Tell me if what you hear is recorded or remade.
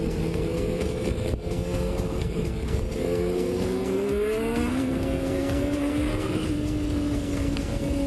remade